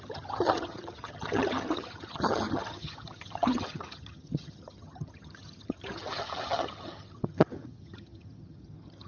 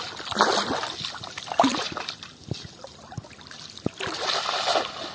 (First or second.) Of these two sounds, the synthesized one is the first